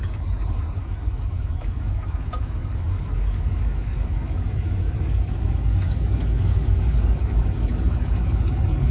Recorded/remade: remade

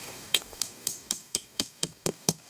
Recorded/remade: remade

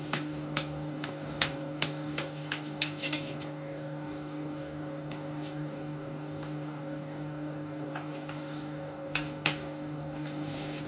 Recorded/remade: remade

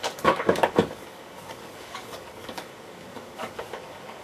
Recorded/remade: remade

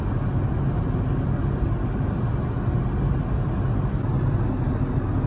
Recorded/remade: recorded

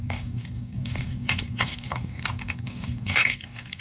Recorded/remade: remade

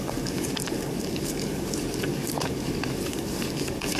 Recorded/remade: remade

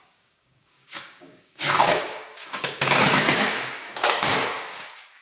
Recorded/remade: remade